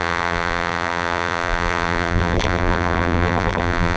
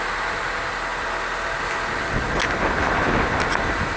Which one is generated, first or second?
first